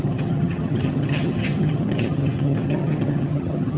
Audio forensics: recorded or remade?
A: remade